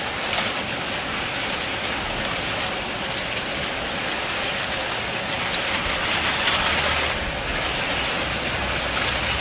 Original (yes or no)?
yes